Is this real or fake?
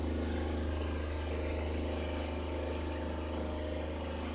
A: real